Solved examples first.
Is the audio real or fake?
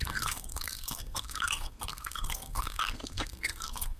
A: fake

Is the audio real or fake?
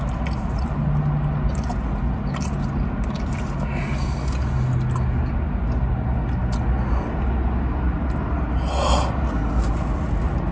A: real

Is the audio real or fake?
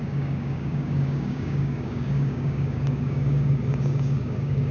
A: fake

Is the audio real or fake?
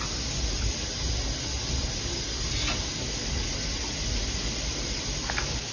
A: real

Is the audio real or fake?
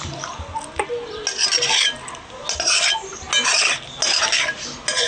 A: real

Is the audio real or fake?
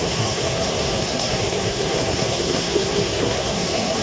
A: fake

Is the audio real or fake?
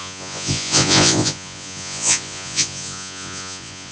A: fake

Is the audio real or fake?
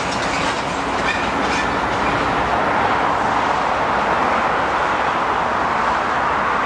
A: real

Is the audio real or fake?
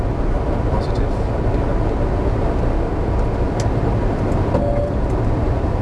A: real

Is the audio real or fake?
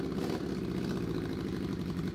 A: real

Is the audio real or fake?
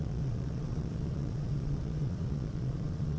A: fake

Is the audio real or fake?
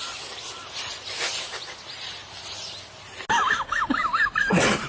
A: real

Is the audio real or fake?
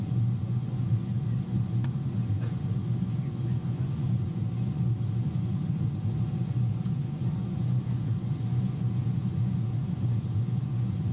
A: fake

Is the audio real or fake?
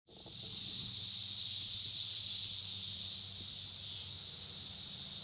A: real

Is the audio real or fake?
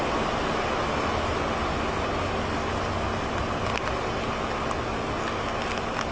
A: real